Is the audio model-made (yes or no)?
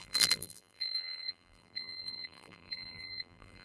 yes